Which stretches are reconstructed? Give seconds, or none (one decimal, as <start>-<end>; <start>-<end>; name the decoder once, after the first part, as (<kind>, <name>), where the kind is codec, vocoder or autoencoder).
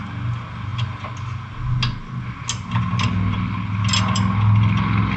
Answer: none